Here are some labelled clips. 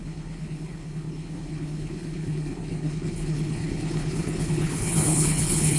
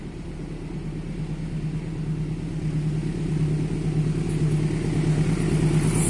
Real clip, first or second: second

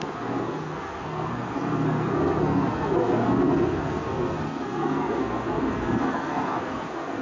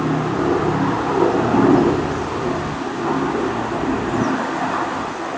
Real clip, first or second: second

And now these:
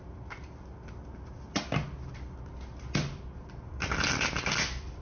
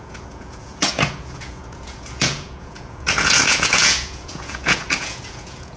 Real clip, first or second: first